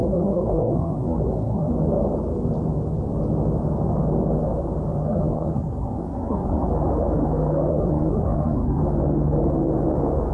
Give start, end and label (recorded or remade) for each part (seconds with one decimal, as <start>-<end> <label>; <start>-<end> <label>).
0.0-1.7 remade; 1.7-5.0 recorded; 5.0-6.7 remade; 6.7-7.7 recorded; 7.7-8.8 remade; 8.8-10.3 recorded